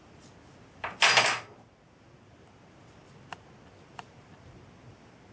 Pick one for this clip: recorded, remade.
recorded